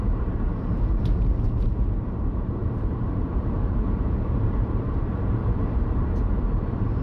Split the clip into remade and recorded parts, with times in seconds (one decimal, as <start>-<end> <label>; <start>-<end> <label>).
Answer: 0.0-7.0 remade